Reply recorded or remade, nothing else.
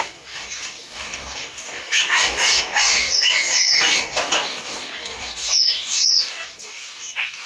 remade